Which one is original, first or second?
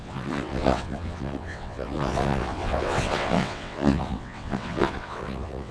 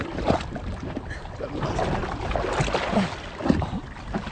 second